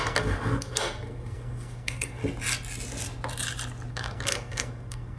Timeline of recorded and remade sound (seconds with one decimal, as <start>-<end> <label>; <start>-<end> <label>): 0.0-2.2 remade; 2.2-3.9 recorded; 3.9-5.2 remade